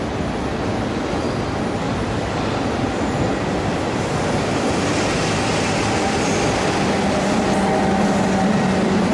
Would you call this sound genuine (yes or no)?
yes